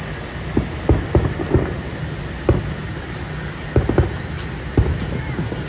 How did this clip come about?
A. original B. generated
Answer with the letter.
A